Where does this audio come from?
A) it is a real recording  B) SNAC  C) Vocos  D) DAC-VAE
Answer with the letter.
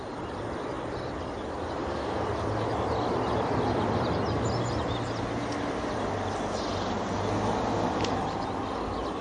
A